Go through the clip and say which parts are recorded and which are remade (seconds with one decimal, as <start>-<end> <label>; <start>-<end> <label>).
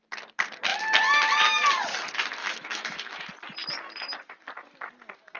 0.0-2.4 recorded; 2.4-3.2 remade; 3.2-5.4 recorded